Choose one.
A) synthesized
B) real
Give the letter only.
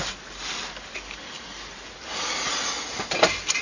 B